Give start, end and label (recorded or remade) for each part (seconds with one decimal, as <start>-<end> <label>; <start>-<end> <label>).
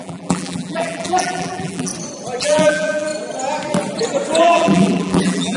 0.0-1.9 remade; 1.9-2.4 recorded; 2.4-3.1 remade; 3.1-4.4 recorded; 4.4-5.6 remade